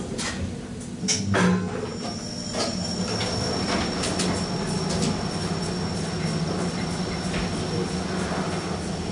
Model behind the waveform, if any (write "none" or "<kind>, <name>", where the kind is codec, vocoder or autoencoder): none